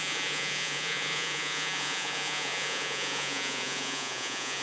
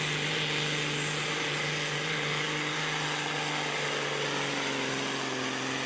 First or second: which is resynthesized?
first